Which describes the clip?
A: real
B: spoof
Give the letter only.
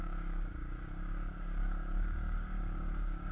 B